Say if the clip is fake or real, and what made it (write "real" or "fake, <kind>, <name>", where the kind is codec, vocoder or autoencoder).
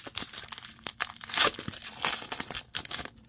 real